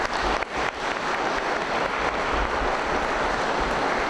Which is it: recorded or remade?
recorded